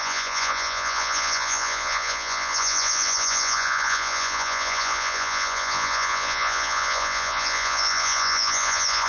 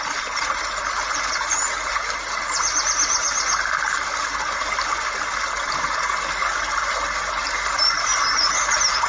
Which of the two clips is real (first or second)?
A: second